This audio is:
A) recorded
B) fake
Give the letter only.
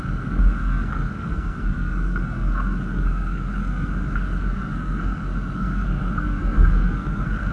B